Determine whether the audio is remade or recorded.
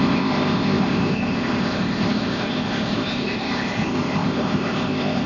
remade